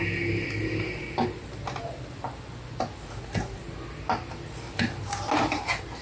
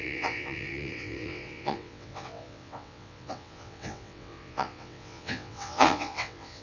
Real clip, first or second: first